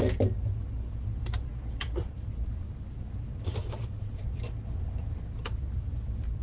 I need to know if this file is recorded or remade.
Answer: remade